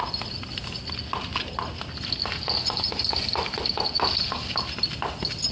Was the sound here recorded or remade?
recorded